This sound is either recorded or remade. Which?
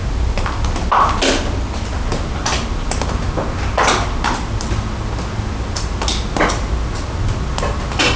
recorded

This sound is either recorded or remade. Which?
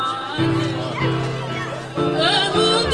recorded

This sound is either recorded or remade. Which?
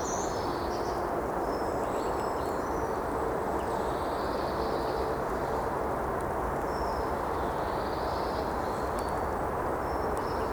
recorded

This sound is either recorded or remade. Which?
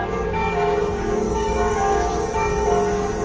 remade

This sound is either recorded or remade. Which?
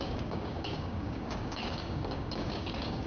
remade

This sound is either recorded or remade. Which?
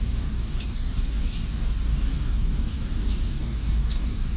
remade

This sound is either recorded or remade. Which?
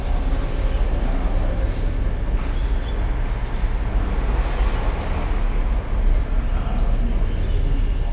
recorded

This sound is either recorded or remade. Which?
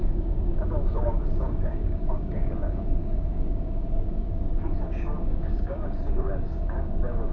remade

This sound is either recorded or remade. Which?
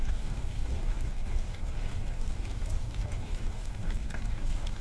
remade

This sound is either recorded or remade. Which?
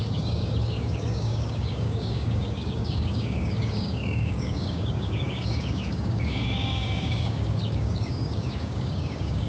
remade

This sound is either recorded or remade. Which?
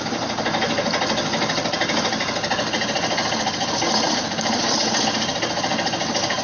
recorded